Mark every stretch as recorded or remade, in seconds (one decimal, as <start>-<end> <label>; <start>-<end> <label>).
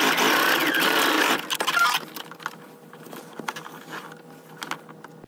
0.0-5.3 recorded